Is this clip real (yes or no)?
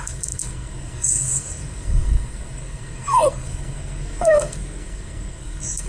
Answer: no